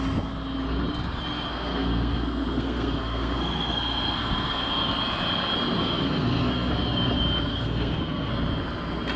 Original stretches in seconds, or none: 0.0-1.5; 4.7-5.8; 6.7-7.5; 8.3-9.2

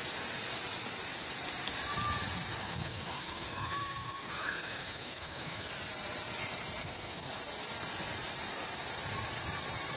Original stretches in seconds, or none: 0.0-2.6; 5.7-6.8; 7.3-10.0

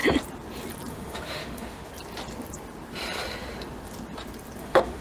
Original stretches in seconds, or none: 0.0-0.9; 1.9-4.6

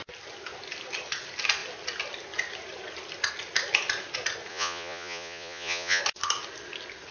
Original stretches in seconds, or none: 0.0-4.5; 6.0-7.1

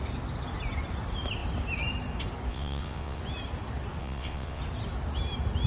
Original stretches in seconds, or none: 0.0-2.5; 3.2-4.0; 4.6-5.7

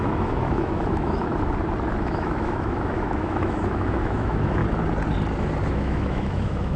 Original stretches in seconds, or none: 1.3-2.0; 4.6-5.7

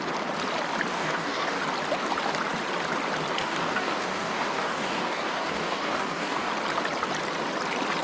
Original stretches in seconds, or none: 0.0-0.9; 1.6-3.4; 6.5-8.0

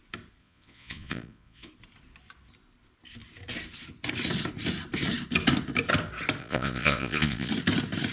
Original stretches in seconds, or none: 0.0-0.4; 1.7-6.4; 7.5-8.1